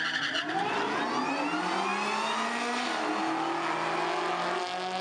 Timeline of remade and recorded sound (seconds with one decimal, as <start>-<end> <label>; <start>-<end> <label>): 0.0-5.0 recorded